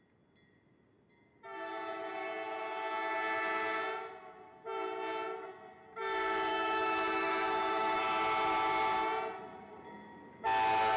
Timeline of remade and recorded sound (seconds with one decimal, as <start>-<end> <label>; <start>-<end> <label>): 0.0-6.5 recorded; 6.5-8.0 remade; 8.0-11.0 recorded